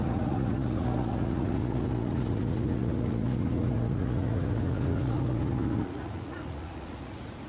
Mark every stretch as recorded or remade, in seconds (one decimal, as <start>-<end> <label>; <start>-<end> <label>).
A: 0.0-7.5 remade